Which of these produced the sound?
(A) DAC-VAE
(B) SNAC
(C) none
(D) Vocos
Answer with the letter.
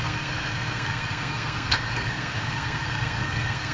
B